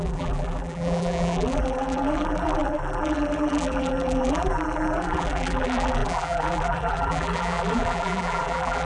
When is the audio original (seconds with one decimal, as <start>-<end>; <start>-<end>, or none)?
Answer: none